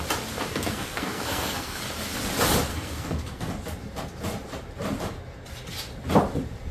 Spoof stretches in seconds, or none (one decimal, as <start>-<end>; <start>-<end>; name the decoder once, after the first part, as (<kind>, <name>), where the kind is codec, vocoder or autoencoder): 0.5-1.8 (codec, SNAC); 2.7-3.5